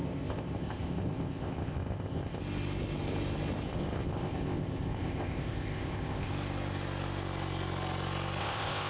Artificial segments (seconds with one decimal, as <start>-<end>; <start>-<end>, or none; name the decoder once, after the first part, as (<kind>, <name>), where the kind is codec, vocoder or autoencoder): 0.0-2.4 (codec, ZipCodec); 3.7-6.3; 8.4-8.9